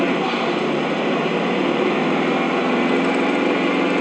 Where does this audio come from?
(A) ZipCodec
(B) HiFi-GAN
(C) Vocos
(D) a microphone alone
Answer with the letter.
D